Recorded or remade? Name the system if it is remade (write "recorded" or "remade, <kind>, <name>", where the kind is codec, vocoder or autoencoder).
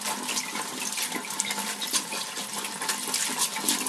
recorded